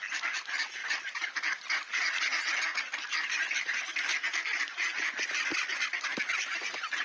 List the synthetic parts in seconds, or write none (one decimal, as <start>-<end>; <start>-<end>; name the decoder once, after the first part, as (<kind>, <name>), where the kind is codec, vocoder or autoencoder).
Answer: none